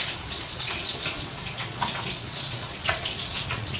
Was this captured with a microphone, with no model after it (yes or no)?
no